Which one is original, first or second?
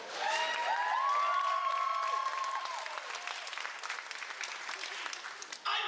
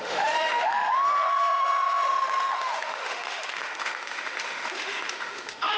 first